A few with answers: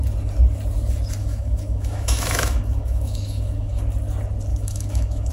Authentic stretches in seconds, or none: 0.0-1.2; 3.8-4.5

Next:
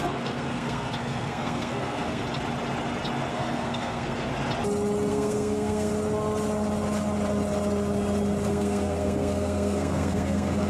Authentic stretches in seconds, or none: 2.2-3.3; 4.3-5.1; 5.9-8.5

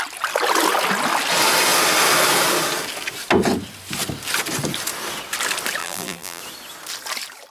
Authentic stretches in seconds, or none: 0.0-5.8; 6.4-7.5

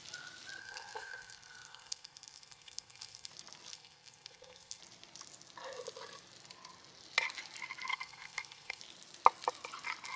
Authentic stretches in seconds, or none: 0.0-0.6; 3.3-3.7; 4.8-7.9; 8.8-10.2